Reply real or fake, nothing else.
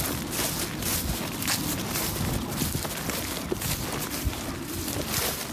real